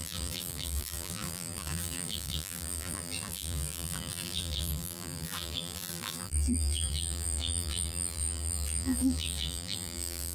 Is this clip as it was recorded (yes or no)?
no